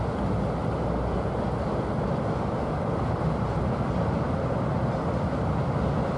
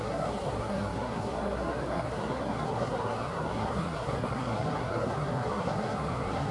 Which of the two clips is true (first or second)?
first